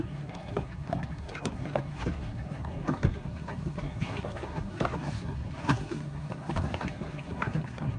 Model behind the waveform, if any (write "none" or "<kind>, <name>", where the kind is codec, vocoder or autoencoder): codec, SNAC